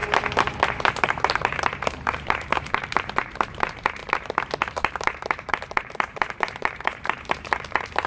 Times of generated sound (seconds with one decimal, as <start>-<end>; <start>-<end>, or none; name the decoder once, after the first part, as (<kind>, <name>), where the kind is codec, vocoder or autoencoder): 0.9-8.1 (vocoder, BigVGAN v2)